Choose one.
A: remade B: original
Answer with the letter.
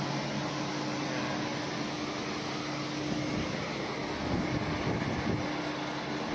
B